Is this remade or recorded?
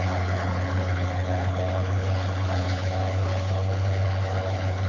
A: remade